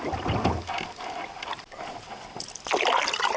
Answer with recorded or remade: recorded